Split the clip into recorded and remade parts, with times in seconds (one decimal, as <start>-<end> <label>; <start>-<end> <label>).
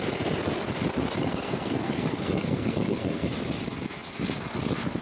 0.0-1.2 recorded; 1.2-3.3 remade; 3.3-5.0 recorded